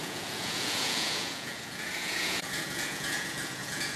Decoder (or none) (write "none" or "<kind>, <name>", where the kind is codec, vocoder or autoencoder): vocoder, Vocos